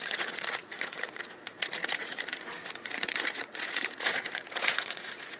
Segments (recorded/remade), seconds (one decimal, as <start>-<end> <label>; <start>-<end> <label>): 0.0-5.4 remade

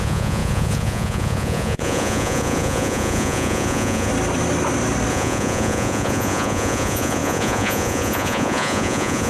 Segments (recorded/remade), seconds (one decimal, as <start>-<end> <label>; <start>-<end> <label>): 0.0-4.1 remade; 4.1-5.1 recorded; 5.1-9.3 remade

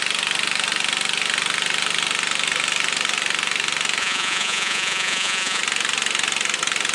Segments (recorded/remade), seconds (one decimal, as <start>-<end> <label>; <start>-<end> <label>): 0.0-4.0 recorded; 4.0-5.6 remade; 5.6-6.9 recorded

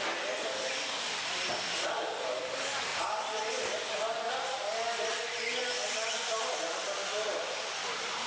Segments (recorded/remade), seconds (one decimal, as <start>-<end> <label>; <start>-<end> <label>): 0.0-8.3 recorded